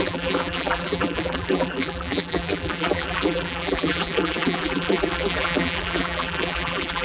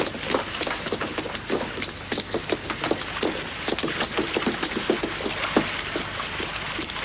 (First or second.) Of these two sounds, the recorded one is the second